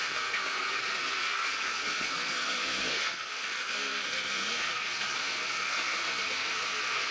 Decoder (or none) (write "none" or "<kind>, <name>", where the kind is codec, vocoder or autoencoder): codec, SNAC